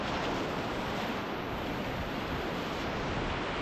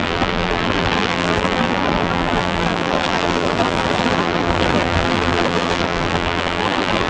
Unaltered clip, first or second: first